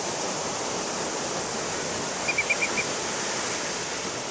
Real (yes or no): yes